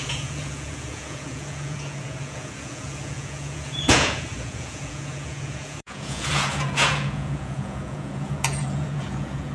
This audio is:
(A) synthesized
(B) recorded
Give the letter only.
A